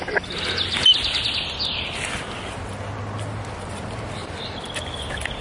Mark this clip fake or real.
real